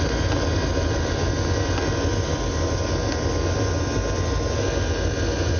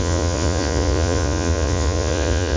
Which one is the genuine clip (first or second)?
first